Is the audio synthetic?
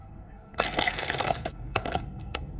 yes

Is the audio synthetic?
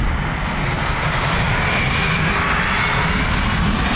no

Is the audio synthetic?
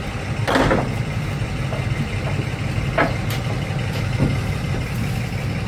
no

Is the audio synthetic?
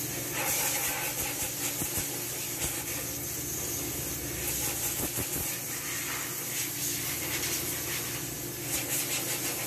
no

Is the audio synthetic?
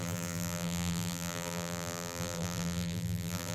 yes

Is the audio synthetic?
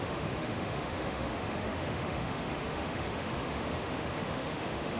yes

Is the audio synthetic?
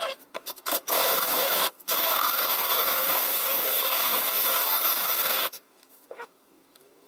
yes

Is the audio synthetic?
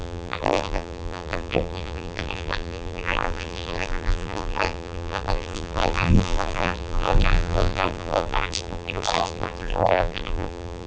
yes